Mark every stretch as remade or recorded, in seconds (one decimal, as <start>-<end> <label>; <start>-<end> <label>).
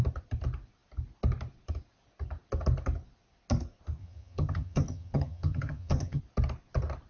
0.0-4.0 recorded; 4.0-6.2 remade; 6.2-7.1 recorded